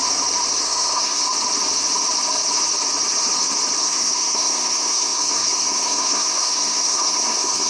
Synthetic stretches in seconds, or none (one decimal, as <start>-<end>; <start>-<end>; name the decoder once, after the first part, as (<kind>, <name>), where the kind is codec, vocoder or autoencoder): 0.6-1.2 (codec, SNAC); 3.8-7.7